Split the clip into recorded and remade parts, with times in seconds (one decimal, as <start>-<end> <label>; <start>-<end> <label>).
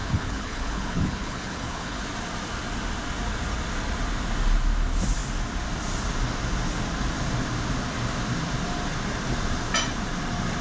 0.0-2.0 remade; 2.0-10.6 recorded